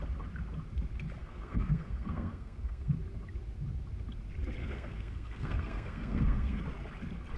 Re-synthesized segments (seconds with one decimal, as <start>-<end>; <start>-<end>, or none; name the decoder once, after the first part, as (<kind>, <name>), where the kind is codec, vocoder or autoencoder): 1.2-2.9 (codec, SNAC); 4.6-6.6